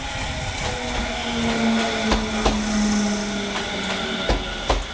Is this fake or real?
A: real